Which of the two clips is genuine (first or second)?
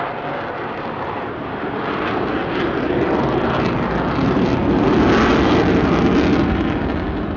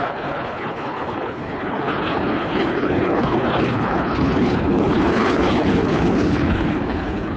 first